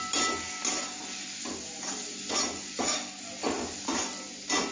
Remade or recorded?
recorded